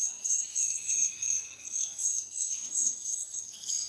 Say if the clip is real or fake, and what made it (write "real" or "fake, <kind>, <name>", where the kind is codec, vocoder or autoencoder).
fake, codec, SNAC